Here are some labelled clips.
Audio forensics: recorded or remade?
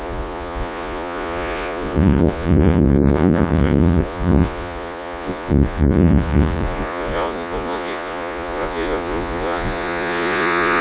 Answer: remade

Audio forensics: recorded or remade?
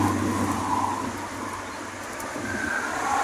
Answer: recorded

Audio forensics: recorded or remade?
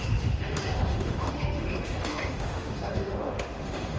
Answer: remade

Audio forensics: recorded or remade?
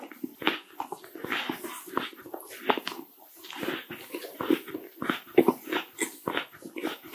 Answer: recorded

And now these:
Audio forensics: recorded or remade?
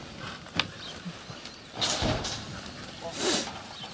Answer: recorded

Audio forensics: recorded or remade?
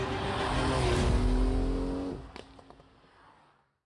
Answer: recorded